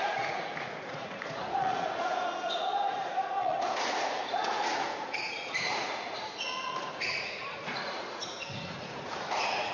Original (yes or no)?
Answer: no